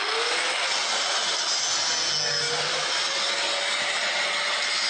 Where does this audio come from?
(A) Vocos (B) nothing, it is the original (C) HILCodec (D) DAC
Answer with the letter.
B